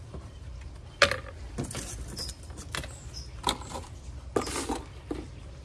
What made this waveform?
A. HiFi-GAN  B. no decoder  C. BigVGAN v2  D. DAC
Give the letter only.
B